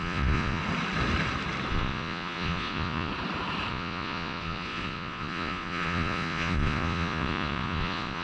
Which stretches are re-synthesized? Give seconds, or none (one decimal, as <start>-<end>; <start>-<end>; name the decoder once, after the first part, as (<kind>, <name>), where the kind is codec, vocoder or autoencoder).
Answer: 0.0-0.6 (vocoder, Vocos); 1.7-3.1; 3.7-8.2